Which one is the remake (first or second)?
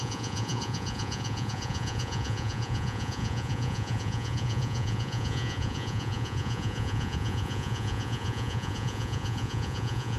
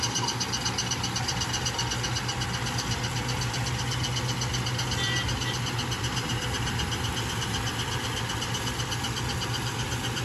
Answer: first